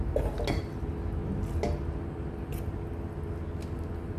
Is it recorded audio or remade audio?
recorded